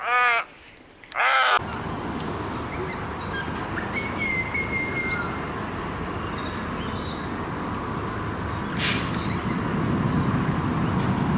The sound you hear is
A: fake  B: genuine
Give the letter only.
B